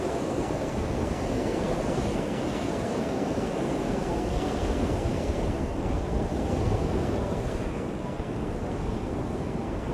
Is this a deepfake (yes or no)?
yes